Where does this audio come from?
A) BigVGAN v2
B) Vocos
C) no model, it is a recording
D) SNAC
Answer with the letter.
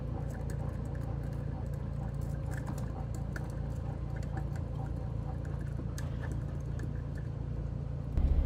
C